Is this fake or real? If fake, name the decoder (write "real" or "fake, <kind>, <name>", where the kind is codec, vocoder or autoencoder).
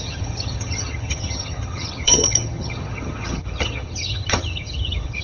fake, vocoder, HiFi-GAN